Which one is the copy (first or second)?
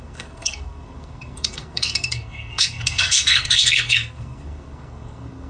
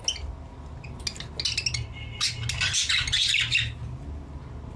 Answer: first